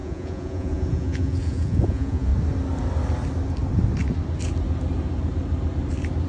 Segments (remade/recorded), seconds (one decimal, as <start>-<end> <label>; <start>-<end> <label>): 0.0-2.3 remade; 2.3-6.3 recorded